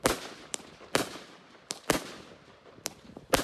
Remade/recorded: remade